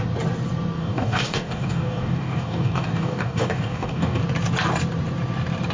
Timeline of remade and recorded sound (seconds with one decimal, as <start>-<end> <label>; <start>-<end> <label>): 0.0-0.8 recorded; 0.8-4.2 remade; 4.2-5.7 recorded